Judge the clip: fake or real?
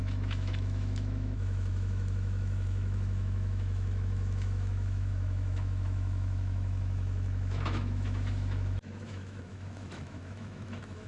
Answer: fake